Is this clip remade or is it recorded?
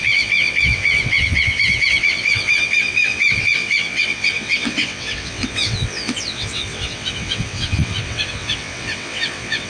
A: remade